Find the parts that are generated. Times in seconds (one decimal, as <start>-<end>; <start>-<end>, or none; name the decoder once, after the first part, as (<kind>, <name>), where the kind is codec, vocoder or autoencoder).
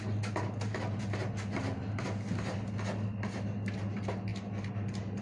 none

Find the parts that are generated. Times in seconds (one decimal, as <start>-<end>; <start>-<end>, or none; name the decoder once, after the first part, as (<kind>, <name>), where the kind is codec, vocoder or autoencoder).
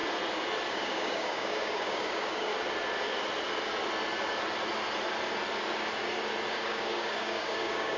0.7-2.5 (codec, DAC); 6.5-8.0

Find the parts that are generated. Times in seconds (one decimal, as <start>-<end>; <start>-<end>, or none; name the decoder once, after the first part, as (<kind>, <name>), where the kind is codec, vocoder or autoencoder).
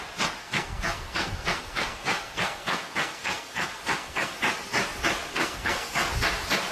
0.4-4.4 (codec, SNAC); 5.3-6.1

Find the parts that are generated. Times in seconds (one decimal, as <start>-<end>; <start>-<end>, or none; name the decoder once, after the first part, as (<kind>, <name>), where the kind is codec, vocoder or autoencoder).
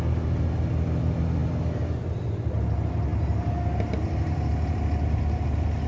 none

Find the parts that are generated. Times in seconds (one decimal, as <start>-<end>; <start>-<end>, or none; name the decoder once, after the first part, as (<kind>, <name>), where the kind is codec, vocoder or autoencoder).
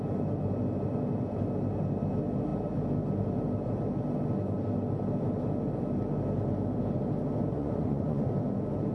7.5-8.3 (vocoder, Vocos)